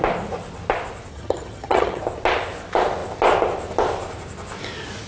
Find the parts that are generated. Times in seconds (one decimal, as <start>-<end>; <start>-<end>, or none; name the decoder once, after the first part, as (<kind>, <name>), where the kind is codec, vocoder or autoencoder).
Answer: 1.1-2.0 (vocoder, HiFi-GAN)